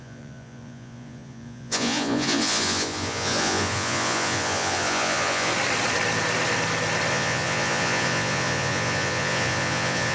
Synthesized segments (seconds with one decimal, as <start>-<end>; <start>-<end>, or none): 0.0-5.5; 7.1-10.1